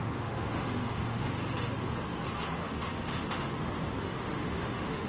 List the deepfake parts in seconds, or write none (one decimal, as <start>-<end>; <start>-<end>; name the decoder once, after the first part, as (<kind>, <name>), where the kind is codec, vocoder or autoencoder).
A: 0.0-1.4 (autoencoder, DAC-VAE); 2.5-3.5; 4.0-5.1